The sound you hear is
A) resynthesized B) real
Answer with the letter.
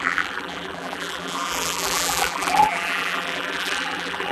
A